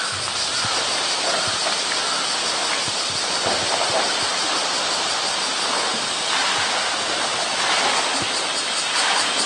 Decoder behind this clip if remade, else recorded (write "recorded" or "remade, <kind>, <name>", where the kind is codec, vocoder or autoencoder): recorded